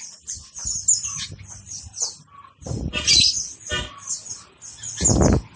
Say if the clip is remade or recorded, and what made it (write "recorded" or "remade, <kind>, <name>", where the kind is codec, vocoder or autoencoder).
recorded